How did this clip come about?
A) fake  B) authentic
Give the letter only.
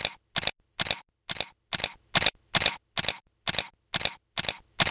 B